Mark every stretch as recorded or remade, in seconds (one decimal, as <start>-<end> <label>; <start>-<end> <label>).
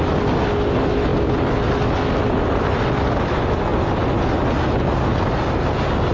0.0-6.1 recorded